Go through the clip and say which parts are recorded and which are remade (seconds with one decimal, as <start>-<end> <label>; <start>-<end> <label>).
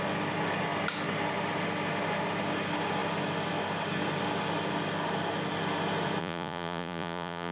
0.0-6.2 recorded; 6.2-7.5 remade